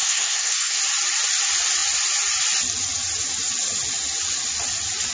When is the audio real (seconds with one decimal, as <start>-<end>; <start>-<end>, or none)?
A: 0.8-5.1